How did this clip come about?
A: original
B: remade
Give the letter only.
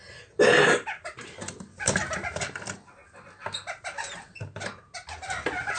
A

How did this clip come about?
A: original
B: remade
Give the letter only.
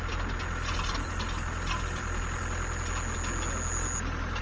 A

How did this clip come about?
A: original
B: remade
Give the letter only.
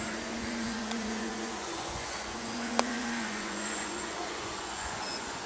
B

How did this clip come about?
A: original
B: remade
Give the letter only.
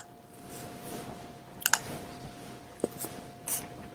A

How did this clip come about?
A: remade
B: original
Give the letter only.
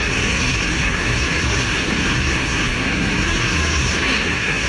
A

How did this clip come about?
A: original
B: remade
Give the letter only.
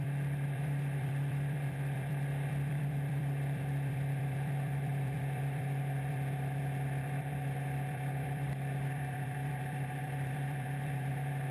B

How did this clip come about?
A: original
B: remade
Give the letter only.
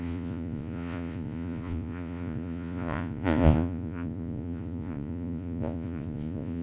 B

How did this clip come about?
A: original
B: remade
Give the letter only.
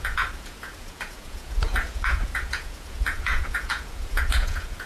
B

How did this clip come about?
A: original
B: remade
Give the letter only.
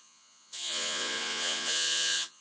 B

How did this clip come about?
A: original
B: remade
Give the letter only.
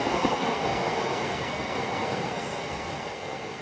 B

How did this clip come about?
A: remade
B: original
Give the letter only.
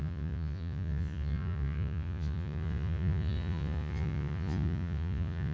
A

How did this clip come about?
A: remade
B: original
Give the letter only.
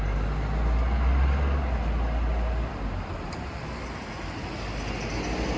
B